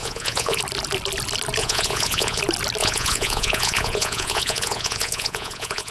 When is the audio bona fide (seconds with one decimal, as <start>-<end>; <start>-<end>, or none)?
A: 0.6-1.6; 2.4-2.8